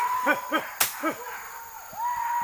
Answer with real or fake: real